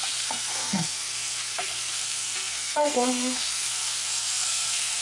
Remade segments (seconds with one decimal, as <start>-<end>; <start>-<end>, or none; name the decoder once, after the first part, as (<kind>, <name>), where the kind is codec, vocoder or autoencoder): 0.0-5.0 (codec, SNAC)